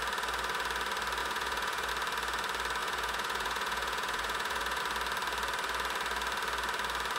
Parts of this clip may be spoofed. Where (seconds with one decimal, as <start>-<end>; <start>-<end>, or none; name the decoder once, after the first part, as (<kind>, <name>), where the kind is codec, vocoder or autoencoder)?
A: 1.2-1.9 (vocoder, Vocos); 2.8-4.8